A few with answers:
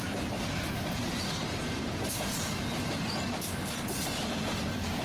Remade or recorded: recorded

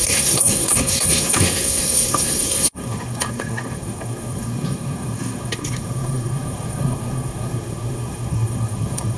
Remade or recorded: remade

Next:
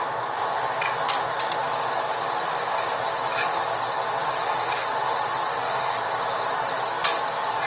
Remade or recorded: recorded